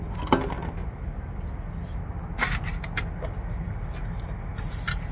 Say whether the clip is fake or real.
real